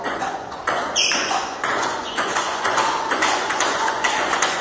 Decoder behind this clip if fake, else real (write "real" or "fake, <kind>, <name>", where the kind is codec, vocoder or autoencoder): fake, vocoder, Vocos